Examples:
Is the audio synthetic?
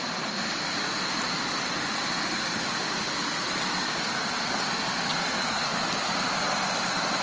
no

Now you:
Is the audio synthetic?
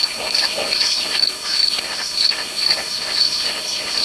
yes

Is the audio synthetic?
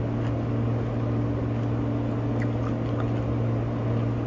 no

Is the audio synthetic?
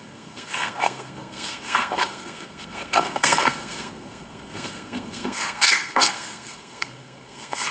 yes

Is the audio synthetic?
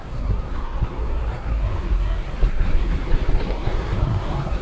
yes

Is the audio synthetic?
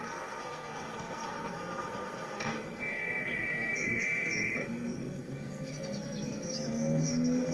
yes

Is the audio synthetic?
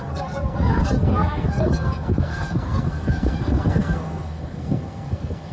yes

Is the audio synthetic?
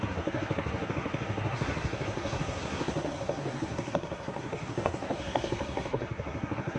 yes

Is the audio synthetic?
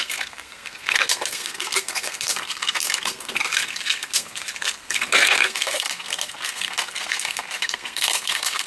yes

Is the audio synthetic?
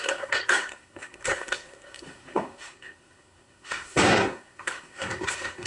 yes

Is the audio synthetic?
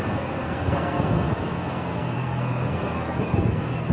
yes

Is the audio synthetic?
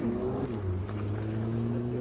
no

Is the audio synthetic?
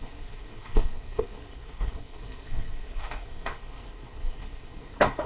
yes